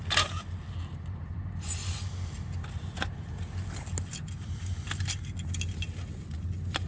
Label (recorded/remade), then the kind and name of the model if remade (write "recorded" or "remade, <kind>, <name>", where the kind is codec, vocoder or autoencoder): recorded